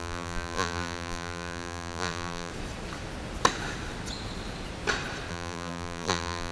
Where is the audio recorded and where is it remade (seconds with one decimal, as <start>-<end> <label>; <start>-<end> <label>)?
0.0-2.5 remade; 2.5-5.3 recorded; 5.3-6.5 remade

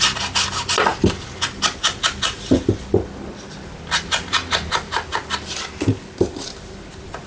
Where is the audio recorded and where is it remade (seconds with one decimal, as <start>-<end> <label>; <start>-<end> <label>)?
0.0-7.3 recorded

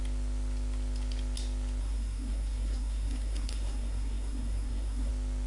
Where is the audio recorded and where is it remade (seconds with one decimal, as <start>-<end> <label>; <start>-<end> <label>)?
0.0-1.8 recorded; 1.8-5.1 remade; 5.1-5.5 recorded

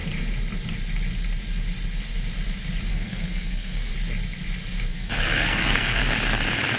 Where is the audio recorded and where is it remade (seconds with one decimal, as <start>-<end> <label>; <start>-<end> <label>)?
0.0-2.9 recorded; 2.9-3.9 remade; 3.9-4.9 recorded; 4.9-6.0 remade; 6.0-6.8 recorded

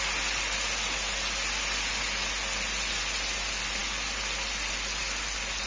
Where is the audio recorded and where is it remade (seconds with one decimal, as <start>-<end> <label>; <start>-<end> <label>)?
0.0-5.7 recorded

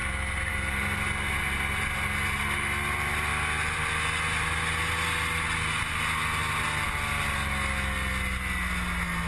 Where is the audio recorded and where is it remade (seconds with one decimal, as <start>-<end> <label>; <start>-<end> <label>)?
0.0-3.3 recorded; 3.3-3.9 remade; 3.9-9.3 recorded

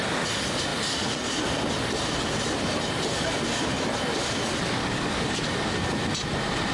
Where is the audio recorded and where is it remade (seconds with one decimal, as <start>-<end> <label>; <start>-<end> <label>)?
0.0-4.8 recorded; 4.8-5.9 remade; 5.9-6.7 recorded

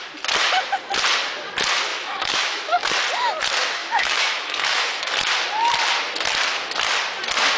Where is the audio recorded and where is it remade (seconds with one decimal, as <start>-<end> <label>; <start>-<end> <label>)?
0.0-1.9 recorded; 1.9-2.9 remade; 2.9-3.8 recorded; 3.8-5.1 remade; 5.1-7.6 recorded